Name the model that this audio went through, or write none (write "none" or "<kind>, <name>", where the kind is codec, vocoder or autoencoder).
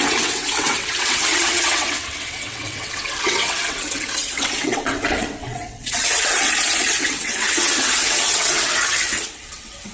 vocoder, WaveNeXt